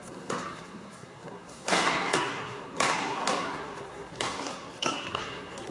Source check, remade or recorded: remade